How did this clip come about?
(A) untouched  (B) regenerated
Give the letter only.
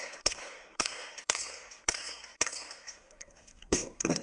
B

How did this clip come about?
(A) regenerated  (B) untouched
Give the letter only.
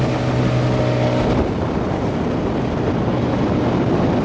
B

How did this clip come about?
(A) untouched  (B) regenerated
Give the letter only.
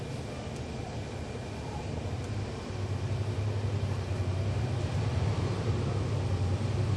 A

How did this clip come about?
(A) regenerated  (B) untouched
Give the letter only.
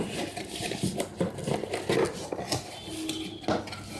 B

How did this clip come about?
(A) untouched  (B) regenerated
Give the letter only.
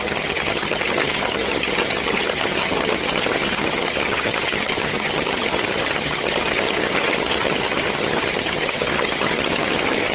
B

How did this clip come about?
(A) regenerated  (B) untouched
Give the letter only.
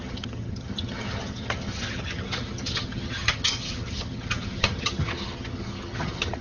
A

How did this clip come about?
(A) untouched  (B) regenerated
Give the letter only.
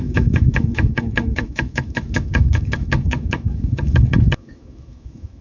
B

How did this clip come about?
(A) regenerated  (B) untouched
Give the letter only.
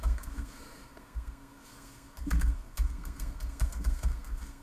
A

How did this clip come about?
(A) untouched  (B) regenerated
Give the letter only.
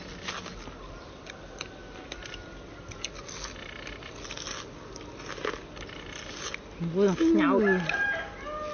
A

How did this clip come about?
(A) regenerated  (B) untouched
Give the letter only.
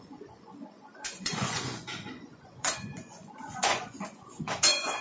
A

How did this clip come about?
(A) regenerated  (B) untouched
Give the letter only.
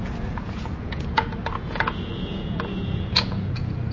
A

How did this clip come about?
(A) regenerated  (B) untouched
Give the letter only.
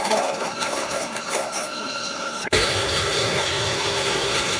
A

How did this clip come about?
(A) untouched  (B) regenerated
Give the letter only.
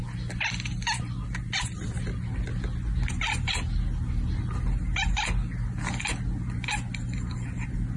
A